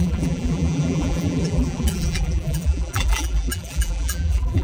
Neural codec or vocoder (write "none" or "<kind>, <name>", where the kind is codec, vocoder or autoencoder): vocoder, BigVGAN v2